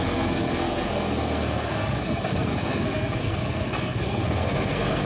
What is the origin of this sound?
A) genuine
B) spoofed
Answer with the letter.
B